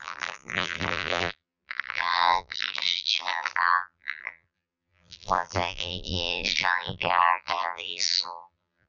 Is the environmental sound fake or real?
fake